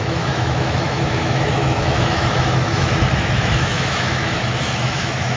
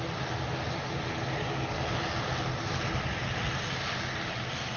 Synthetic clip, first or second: first